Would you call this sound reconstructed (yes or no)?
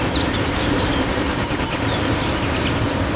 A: no